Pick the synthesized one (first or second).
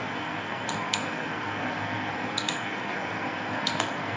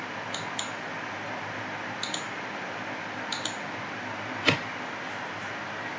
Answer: first